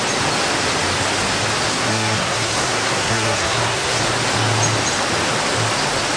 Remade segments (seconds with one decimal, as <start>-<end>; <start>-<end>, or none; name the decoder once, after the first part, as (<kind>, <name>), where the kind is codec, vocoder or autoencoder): 1.7-4.0 (codec, SNAC)